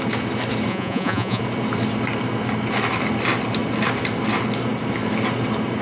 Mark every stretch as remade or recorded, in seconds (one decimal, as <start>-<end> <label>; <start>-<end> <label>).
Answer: 0.0-0.7 recorded; 0.7-1.4 remade; 1.4-5.8 recorded